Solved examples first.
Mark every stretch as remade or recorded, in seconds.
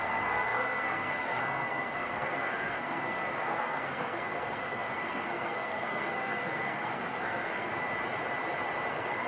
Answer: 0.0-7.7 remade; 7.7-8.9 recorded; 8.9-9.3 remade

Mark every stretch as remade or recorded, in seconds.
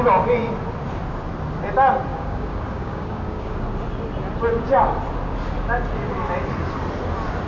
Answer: 0.0-2.1 recorded; 2.1-3.6 remade; 3.6-7.5 recorded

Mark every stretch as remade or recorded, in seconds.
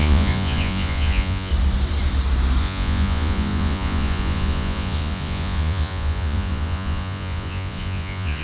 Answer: 0.0-1.5 remade; 1.5-2.6 recorded; 2.6-8.4 remade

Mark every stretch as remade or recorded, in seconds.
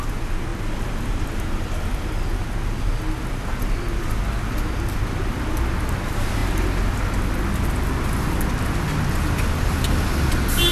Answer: 0.0-10.7 recorded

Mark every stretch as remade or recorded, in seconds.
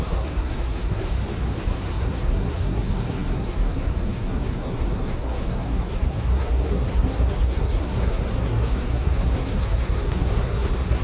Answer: 0.0-1.0 remade; 1.0-1.7 recorded; 1.7-11.0 remade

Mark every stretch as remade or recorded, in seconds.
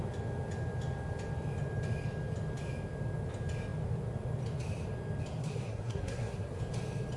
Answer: 0.0-5.4 recorded; 5.4-6.6 remade; 6.6-7.2 recorded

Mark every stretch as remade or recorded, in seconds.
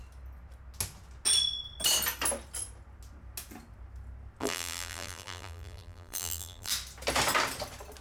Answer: 0.0-4.4 recorded; 4.4-6.7 remade; 6.7-8.0 recorded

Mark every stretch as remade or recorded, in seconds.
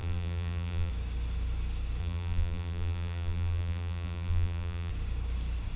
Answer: 0.0-0.9 remade; 0.9-2.0 recorded; 2.0-4.9 remade; 4.9-5.8 recorded